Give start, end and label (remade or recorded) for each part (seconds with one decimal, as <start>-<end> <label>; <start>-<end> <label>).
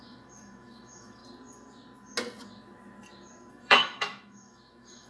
0.0-1.2 remade; 1.2-3.5 recorded; 3.5-5.1 remade